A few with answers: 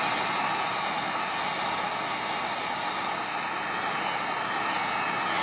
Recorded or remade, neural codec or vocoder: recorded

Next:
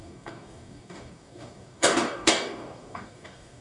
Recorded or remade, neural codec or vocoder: remade, codec, DAC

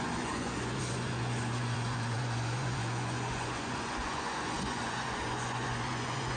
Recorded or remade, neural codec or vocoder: remade, vocoder, Vocos